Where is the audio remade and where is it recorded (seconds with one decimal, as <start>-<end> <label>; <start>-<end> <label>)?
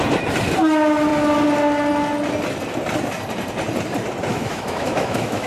0.0-4.3 recorded; 4.3-5.5 remade